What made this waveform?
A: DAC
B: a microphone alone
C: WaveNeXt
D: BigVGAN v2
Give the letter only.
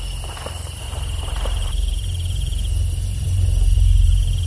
D